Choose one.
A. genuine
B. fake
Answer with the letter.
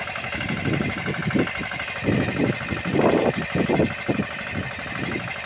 A